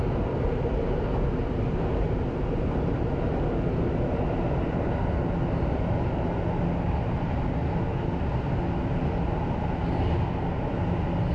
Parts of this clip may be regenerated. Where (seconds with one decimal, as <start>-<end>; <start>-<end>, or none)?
none